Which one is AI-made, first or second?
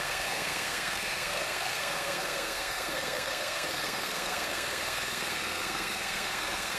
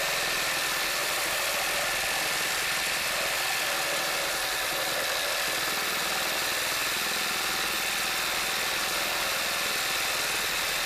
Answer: first